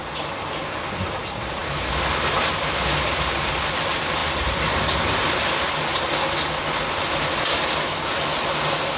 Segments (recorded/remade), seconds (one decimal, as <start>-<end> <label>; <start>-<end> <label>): 0.0-9.0 recorded